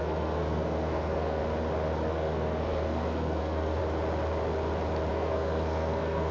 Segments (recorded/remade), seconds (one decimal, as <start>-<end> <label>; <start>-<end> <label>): 0.0-1.4 remade; 1.4-2.1 recorded; 2.1-3.8 remade; 3.8-5.1 recorded; 5.1-6.3 remade